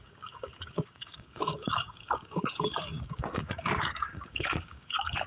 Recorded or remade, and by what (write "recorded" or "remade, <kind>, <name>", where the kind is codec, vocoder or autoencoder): remade, codec, DAC